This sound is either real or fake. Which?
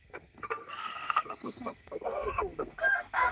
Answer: fake